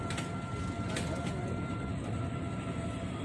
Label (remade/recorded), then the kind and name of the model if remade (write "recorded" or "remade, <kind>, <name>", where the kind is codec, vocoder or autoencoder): recorded